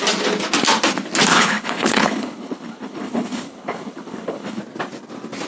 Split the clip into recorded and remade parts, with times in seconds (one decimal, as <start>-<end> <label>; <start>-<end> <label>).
0.0-1.3 recorded; 1.3-4.6 remade; 4.6-5.5 recorded